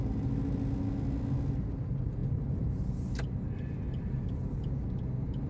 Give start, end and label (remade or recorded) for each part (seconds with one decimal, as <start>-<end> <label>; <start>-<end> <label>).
0.0-5.5 recorded